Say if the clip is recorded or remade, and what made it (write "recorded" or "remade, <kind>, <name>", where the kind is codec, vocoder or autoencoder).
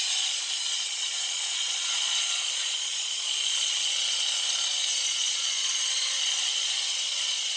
remade, vocoder, Vocos